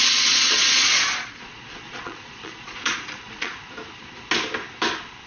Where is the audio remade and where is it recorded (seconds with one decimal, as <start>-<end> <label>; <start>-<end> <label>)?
0.0-3.5 remade; 3.5-5.3 recorded